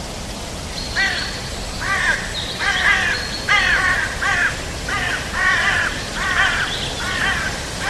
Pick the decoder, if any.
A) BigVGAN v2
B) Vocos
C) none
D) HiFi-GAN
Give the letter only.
C